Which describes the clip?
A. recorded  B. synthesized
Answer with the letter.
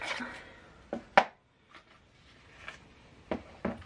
A